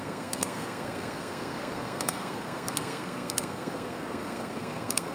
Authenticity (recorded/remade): remade